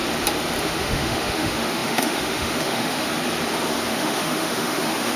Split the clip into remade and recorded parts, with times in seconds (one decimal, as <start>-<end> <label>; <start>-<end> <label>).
0.0-0.6 recorded; 0.6-3.1 remade; 3.1-3.9 recorded; 3.9-5.2 remade